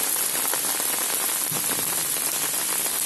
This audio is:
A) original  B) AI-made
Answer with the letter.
A